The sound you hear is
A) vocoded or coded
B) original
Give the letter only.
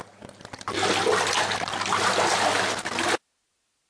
B